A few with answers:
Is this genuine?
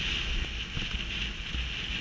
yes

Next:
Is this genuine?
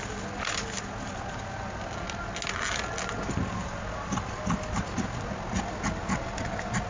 yes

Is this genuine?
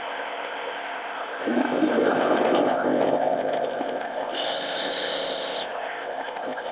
no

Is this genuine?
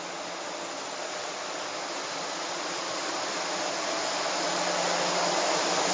yes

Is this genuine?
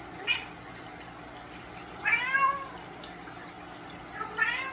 yes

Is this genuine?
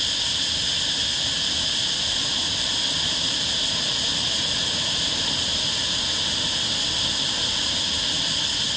yes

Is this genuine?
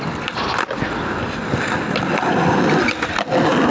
yes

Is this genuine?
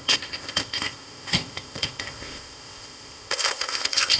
no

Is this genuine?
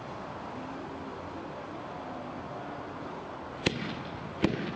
yes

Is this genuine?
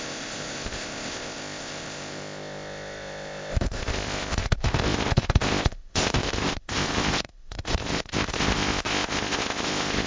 no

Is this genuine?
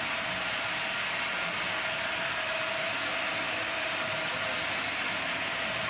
yes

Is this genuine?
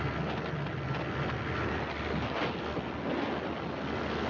yes